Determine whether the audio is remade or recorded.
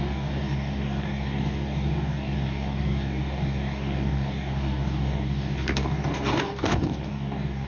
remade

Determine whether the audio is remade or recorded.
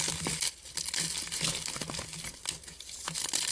recorded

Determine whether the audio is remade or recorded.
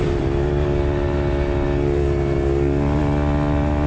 recorded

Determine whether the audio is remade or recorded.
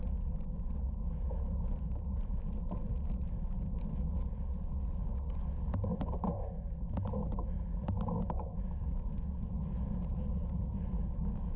recorded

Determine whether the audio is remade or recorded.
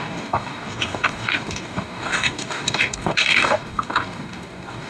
remade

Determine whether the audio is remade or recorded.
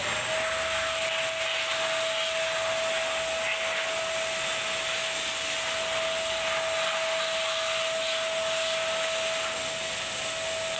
recorded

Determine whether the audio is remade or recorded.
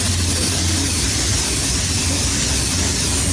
recorded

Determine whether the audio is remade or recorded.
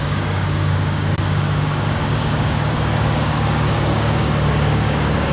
remade